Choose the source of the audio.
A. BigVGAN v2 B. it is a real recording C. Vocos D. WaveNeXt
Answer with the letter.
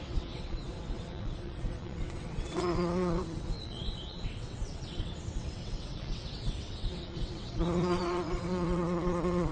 D